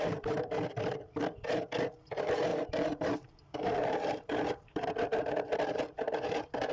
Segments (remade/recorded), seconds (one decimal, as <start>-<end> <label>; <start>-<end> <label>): 0.0-2.5 recorded; 2.5-6.7 remade